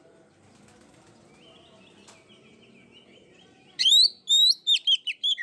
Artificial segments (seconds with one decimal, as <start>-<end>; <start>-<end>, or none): none